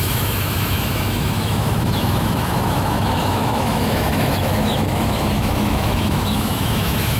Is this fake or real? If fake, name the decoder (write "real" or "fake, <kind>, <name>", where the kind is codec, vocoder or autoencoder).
fake, autoencoder, DAC-VAE